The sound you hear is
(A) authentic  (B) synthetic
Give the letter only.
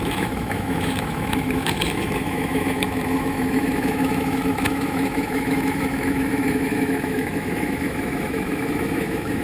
B